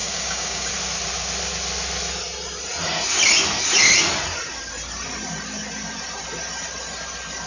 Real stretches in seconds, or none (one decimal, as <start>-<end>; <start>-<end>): 0.7-7.5